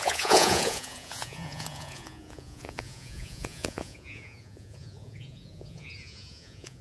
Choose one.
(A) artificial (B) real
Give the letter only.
A